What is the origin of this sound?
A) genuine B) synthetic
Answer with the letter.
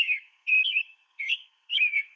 B